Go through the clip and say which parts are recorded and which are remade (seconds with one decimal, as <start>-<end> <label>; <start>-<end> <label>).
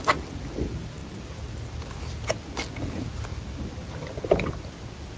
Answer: 0.0-3.3 recorded; 3.3-4.5 remade; 4.5-5.2 recorded